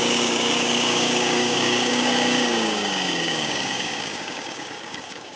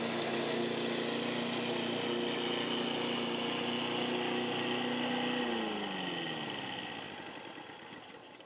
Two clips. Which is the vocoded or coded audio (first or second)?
first